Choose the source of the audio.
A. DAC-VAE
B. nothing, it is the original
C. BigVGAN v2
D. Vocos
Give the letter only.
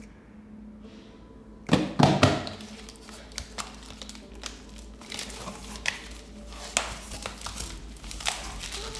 B